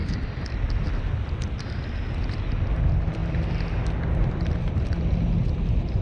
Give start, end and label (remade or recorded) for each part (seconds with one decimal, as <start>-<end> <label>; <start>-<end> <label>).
0.0-6.0 recorded